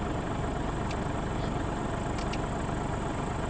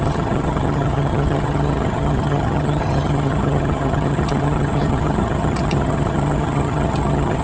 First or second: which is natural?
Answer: first